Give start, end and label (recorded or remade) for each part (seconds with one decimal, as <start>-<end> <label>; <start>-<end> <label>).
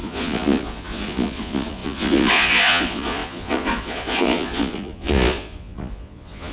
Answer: 0.0-6.5 remade